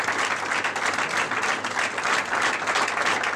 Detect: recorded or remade recorded